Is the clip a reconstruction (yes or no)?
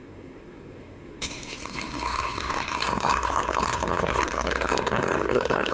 yes